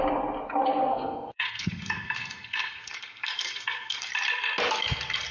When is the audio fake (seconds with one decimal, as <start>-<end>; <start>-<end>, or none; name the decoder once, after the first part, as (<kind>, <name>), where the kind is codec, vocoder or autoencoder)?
0.9-4.1 (codec, SNAC)